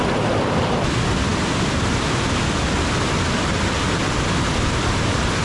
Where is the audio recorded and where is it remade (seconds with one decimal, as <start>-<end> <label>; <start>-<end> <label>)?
0.0-5.4 recorded